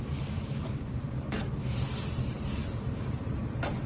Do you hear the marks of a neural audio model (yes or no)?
yes